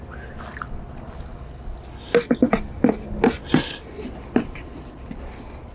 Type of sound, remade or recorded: recorded